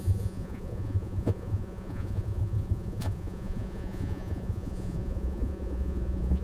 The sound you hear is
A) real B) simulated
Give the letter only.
B